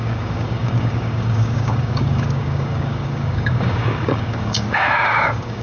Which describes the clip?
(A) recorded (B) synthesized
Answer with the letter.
B